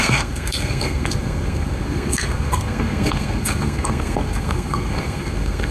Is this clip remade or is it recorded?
remade